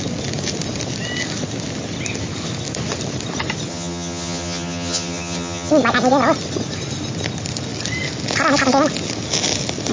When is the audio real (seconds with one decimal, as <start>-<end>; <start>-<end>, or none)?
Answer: 0.0-3.7; 5.7-9.9